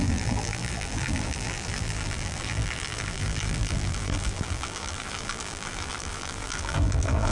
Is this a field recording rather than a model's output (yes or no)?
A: no